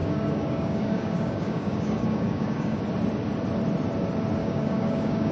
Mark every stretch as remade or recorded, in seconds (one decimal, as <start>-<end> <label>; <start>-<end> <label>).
0.0-2.8 remade; 2.8-4.4 recorded; 4.4-5.3 remade